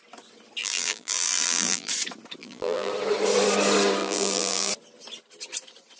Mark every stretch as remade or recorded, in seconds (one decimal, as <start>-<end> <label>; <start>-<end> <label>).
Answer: 0.0-0.6 recorded; 0.6-1.9 remade; 1.9-2.4 recorded; 2.4-2.9 remade; 2.9-4.0 recorded; 4.0-4.7 remade; 4.7-6.0 recorded